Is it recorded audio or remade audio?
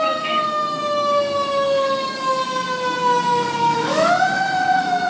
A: remade